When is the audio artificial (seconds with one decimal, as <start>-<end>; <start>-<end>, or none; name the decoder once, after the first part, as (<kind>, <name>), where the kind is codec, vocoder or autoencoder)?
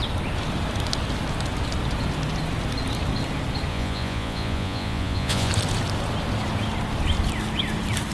3.7-5.5 (vocoder, Vocos)